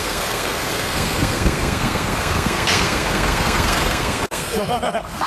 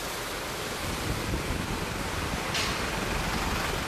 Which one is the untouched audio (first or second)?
second